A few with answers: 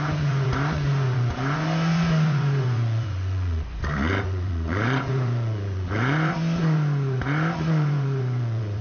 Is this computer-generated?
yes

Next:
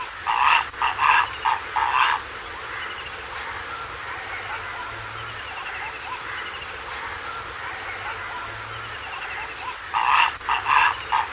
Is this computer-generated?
no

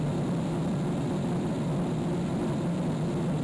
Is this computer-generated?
no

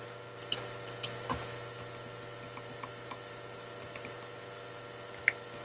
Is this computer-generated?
no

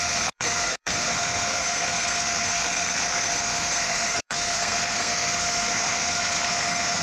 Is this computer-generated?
yes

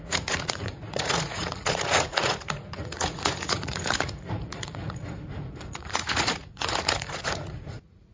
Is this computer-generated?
yes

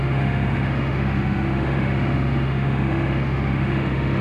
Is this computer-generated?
yes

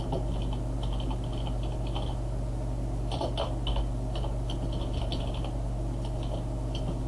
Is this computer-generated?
no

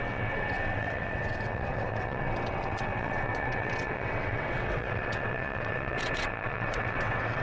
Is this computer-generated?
yes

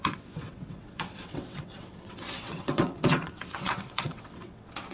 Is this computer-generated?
yes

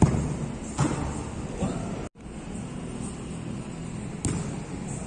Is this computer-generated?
no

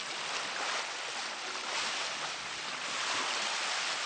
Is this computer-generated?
no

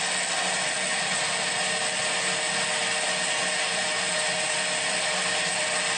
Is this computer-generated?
no